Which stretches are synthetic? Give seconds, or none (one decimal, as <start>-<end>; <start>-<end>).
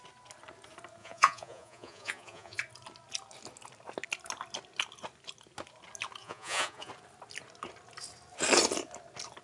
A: 1.0-2.6; 6.2-6.9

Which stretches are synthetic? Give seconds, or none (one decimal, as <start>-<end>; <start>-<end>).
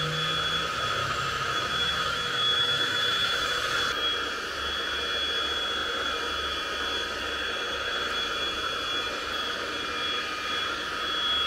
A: 1.0-3.6